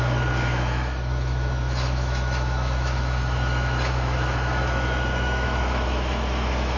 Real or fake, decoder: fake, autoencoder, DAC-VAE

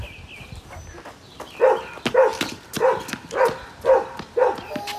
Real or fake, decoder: real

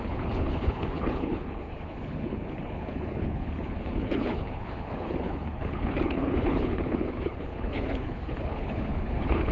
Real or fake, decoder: fake, codec, HILCodec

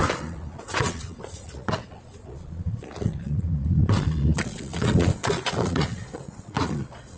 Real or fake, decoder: fake, vocoder, Vocos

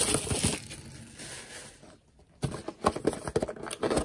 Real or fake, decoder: real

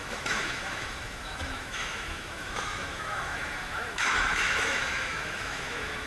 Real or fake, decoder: fake, autoencoder, DAC-VAE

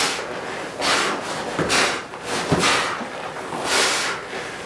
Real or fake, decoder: real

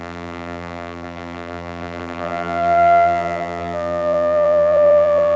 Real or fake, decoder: fake, vocoder, BigVGAN v2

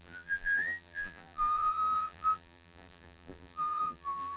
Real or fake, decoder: fake, vocoder, BigVGAN v2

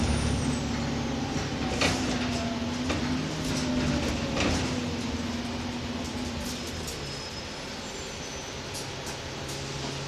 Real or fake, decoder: real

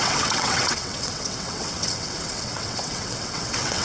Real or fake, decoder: fake, vocoder, WaveNeXt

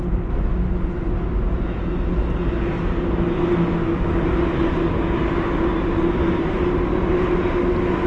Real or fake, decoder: real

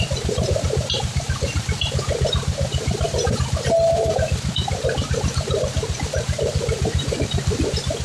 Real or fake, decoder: fake, vocoder, BigVGAN v2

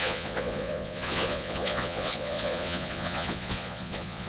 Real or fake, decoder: fake, vocoder, Vocos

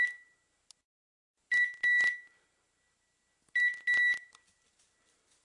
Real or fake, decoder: real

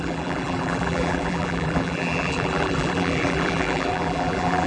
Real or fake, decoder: fake, vocoder, BigVGAN v2